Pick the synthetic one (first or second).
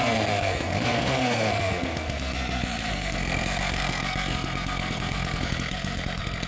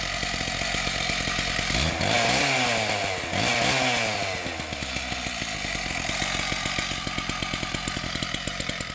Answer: first